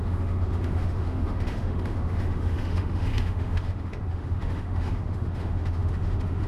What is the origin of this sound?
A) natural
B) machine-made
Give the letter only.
B